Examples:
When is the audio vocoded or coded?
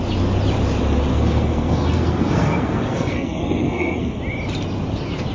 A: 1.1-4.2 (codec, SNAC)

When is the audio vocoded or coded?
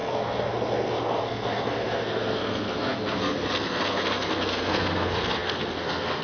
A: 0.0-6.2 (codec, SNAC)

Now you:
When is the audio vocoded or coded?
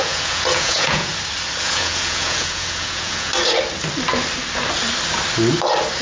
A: 0.0-1.1 (vocoder, Vocos); 1.6-3.3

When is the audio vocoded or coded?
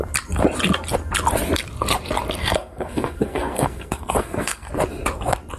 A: 2.4-4.7 (codec, SNAC)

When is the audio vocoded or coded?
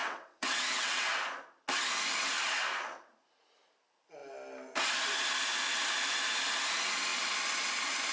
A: 0.0-1.1 (vocoder, WaveNeXt)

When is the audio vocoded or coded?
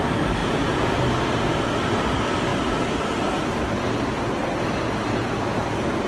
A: 0.4-1.0 (vocoder, Vocos)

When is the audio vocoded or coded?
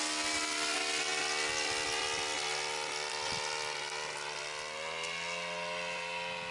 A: none